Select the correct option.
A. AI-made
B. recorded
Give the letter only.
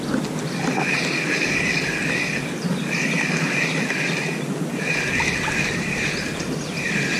B